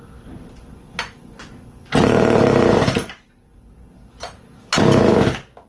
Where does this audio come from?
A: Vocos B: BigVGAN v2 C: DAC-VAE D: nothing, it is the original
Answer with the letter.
D